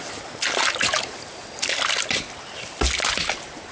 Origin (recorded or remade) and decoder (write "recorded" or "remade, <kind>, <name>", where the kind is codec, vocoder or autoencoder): recorded